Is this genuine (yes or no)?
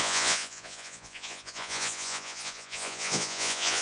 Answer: no